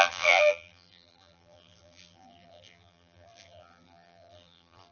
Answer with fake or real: fake